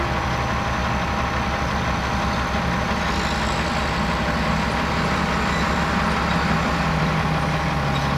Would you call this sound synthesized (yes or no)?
no